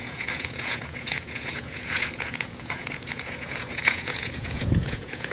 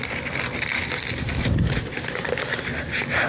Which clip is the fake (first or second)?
first